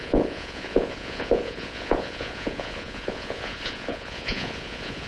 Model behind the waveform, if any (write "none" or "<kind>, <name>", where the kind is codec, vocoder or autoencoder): vocoder, Vocos